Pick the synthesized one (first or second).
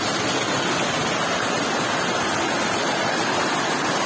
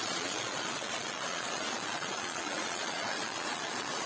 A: second